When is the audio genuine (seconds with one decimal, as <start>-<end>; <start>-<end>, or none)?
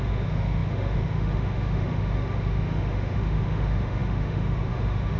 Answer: none